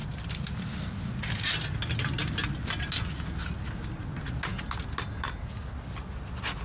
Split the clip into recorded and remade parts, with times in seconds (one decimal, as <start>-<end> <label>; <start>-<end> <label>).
0.0-6.6 recorded